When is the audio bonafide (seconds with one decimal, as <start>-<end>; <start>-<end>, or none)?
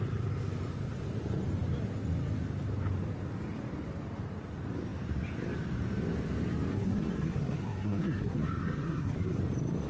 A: 0.0-6.7; 9.4-9.9